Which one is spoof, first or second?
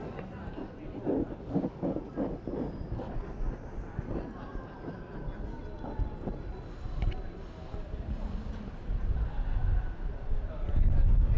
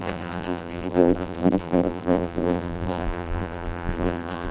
second